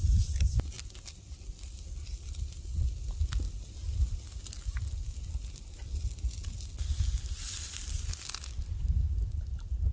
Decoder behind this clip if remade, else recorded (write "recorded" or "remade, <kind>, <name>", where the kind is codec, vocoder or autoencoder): recorded